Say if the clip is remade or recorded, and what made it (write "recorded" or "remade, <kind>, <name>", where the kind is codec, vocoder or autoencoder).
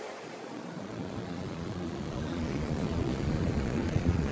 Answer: remade, vocoder, Vocos